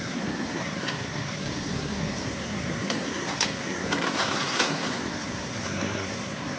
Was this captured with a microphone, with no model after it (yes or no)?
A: no